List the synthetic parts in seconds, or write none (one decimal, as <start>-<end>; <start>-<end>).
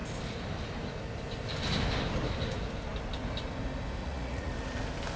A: 4.0-4.5